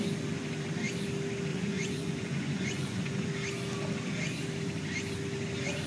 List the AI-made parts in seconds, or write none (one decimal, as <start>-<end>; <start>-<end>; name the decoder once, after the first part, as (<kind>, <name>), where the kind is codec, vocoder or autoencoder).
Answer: 1.5-3.3 (vocoder, Vocos)